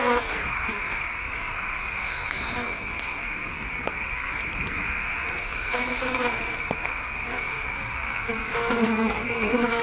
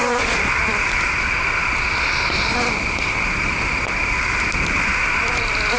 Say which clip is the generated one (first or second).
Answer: first